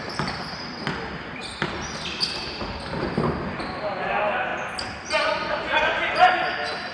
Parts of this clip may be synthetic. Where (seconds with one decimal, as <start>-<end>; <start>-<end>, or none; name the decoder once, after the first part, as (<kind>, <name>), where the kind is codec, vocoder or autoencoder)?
none